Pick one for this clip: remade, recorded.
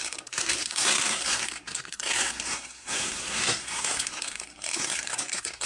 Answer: remade